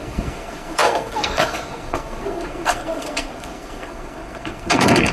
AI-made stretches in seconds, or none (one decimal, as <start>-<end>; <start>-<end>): 0.0-5.1